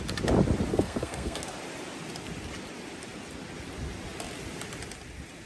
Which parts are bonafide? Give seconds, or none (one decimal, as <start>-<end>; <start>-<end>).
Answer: 0.0-0.7; 1.5-5.5